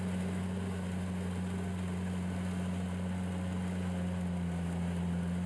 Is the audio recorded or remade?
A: recorded